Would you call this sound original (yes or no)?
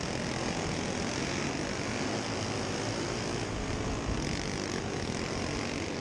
yes